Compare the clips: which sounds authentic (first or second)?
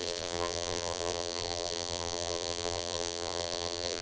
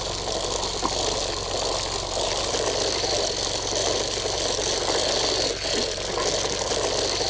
second